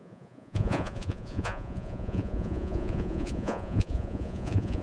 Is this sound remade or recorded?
remade